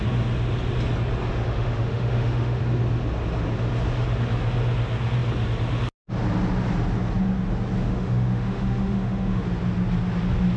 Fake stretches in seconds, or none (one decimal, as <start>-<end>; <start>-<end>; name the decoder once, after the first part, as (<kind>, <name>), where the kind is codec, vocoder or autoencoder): 1.3-2.6 (autoencoder, DAC-VAE); 7.8-9.4